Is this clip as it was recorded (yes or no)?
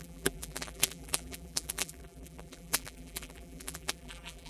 no